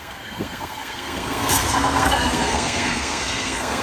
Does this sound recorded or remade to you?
remade